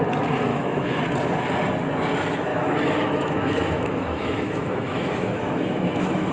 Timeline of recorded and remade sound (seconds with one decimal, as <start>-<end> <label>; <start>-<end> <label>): 0.0-0.5 recorded; 0.5-1.0 remade; 1.0-2.5 recorded; 2.5-6.3 remade